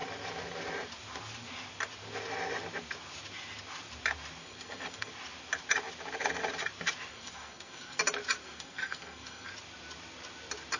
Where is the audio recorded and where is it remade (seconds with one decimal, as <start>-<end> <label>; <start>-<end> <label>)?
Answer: 0.0-4.4 recorded; 4.4-5.1 remade; 5.1-7.1 recorded; 7.1-8.0 remade; 8.0-8.4 recorded; 8.4-9.5 remade; 9.5-10.8 recorded